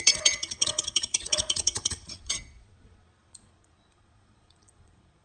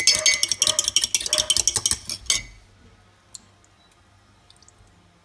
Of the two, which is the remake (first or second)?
first